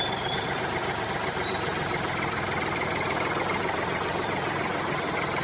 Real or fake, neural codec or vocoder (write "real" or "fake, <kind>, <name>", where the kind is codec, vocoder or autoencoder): fake, vocoder, BigVGAN v2